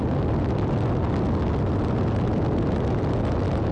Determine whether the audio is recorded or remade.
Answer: recorded